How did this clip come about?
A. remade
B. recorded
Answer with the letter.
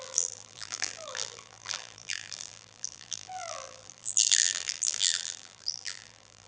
A